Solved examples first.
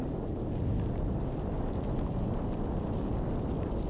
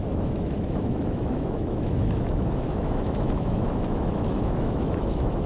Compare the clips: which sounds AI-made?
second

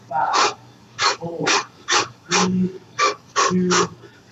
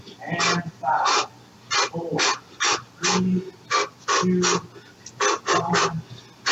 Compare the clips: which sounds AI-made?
first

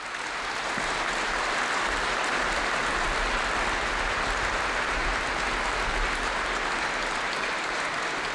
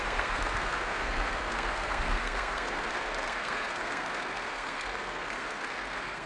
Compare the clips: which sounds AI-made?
second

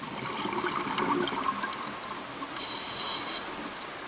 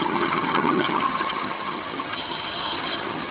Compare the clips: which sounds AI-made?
second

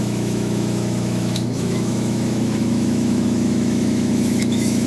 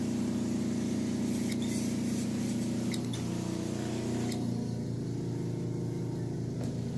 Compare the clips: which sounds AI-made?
first